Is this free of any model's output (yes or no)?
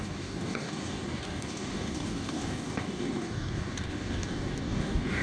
no